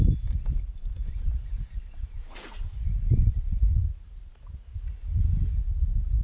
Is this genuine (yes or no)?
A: yes